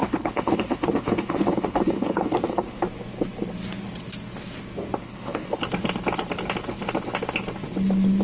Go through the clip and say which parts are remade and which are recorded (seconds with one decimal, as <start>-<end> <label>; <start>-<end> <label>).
0.0-2.8 remade; 2.8-5.0 recorded; 5.0-5.6 remade; 5.6-8.2 recorded